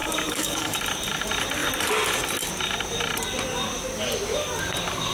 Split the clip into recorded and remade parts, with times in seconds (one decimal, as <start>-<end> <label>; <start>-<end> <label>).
0.0-0.8 remade; 0.8-5.1 recorded